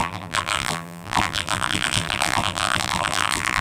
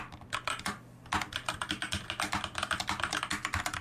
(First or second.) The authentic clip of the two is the second